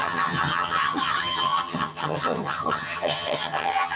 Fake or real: fake